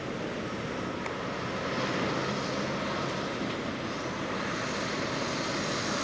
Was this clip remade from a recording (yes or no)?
no